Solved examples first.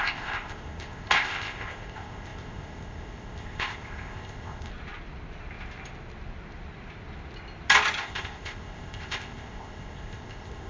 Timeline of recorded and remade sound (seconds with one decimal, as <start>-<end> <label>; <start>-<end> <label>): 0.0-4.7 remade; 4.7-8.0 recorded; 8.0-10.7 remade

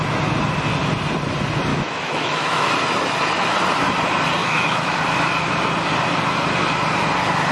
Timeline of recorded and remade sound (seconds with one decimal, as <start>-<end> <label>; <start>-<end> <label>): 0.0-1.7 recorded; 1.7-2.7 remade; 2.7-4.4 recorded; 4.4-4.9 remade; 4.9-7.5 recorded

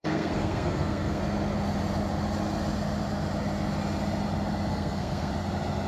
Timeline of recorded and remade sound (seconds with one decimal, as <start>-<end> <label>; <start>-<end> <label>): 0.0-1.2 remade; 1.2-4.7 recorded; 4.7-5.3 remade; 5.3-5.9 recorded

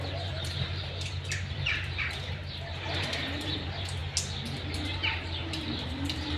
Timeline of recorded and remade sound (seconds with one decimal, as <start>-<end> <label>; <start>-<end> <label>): 0.0-4.0 remade; 4.0-4.8 recorded; 4.8-6.4 remade

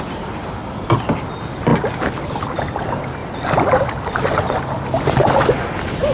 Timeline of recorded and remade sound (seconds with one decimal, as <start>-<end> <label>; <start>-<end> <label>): 0.0-1.7 remade; 1.7-2.8 recorded; 2.8-3.2 remade; 3.2-3.8 recorded; 3.8-6.1 remade

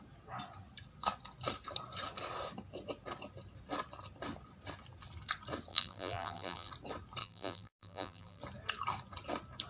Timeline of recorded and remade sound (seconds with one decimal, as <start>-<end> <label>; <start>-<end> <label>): 0.0-5.7 recorded; 5.7-6.7 remade; 6.7-7.2 recorded; 7.2-8.4 remade; 8.4-9.7 recorded